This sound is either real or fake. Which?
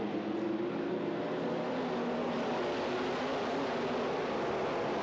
real